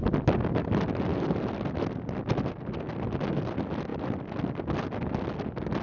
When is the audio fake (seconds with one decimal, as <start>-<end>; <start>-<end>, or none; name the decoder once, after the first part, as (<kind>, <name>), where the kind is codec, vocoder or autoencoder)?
none